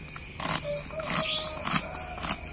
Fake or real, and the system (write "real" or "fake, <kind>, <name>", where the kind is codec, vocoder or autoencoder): real